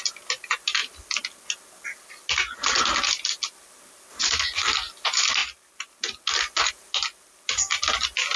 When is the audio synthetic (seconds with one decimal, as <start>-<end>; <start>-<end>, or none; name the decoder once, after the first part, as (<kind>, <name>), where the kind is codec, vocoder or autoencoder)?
none